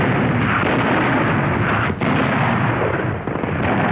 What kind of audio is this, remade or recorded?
recorded